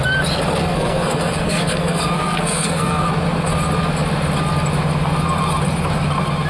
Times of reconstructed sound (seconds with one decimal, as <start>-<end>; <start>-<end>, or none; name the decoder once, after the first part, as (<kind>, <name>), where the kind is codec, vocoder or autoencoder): 0.6-3.1 (codec, SNAC)